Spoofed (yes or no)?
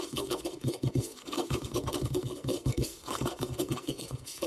yes